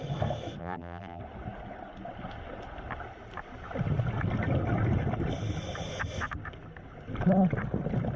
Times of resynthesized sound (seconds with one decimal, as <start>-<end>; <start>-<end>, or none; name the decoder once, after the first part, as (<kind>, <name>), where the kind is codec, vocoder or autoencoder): 0.6-1.2 (vocoder, BigVGAN v2)